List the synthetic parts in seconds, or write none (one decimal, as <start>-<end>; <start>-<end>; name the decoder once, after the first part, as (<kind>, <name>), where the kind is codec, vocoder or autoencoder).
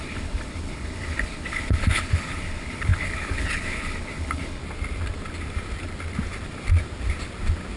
0.0-4.6 (codec, HILCodec)